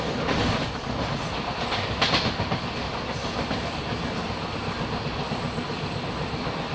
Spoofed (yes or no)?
no